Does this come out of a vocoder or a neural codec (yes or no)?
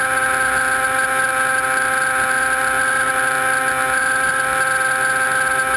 no